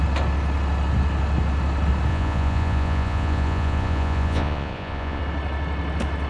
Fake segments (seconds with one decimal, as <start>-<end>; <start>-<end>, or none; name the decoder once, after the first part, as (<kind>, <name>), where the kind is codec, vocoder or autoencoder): 2.1-5.2 (vocoder, Vocos)